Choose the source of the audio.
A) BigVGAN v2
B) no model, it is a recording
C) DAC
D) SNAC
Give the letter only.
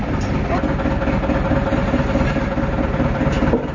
B